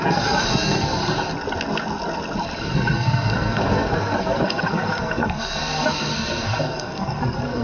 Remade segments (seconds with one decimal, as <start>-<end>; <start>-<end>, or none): 0.0-1.0; 2.6-7.6

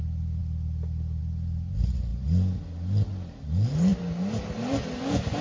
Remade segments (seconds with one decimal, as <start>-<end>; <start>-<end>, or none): none

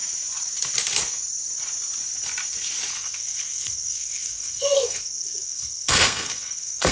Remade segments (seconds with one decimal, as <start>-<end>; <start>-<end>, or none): 2.9-6.9

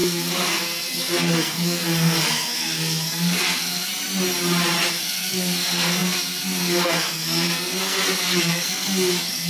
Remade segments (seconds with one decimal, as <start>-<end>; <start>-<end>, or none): 0.0-3.9; 4.9-9.5